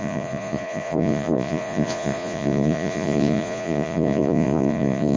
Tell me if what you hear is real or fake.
fake